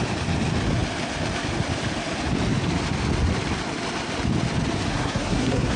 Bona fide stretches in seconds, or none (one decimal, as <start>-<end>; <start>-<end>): 0.0-4.9